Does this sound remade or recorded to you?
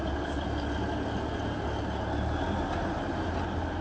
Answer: recorded